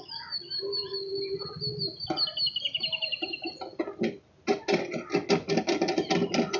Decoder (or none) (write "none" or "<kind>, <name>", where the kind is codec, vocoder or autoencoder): none